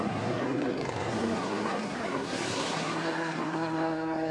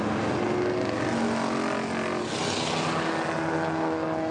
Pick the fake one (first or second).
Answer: first